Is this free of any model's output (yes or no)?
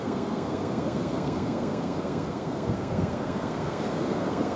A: no